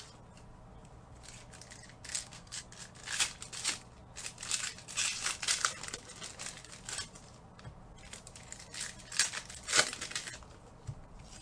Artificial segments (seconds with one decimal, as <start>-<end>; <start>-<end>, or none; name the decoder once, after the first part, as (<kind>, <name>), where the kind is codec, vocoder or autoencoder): 2.1-2.6 (codec, SNAC)